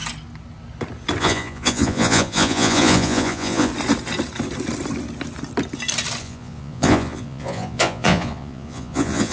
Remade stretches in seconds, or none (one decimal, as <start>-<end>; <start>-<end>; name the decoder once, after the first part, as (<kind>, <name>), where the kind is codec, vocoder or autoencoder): 1.2-3.7 (vocoder, Vocos); 6.2-9.3